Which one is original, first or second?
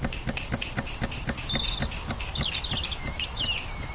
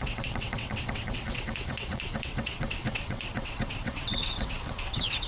first